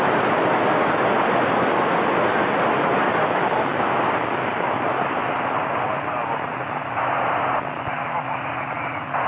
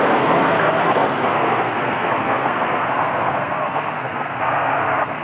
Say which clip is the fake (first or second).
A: second